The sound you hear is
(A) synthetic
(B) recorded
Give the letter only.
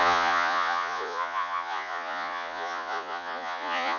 A